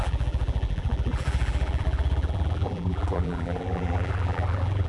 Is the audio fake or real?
fake